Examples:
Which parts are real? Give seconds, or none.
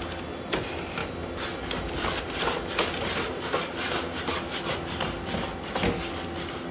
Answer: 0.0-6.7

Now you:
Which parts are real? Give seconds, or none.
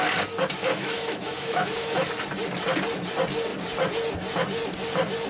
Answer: 0.0-0.7; 2.1-5.3